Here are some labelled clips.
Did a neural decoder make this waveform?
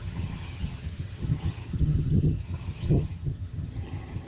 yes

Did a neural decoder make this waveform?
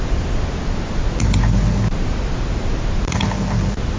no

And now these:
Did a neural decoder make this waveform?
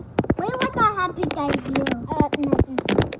no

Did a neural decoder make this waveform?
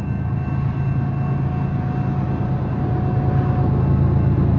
no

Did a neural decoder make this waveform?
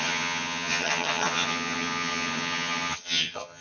yes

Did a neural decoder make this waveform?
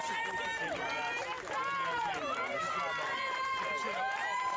no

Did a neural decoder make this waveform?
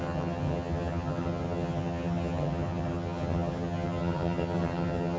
yes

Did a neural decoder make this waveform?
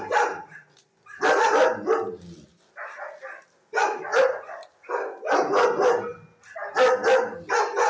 no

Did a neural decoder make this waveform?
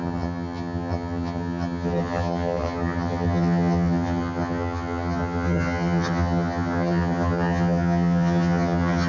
yes